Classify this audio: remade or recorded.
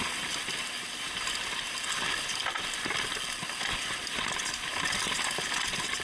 recorded